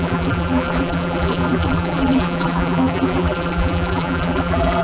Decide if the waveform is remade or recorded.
remade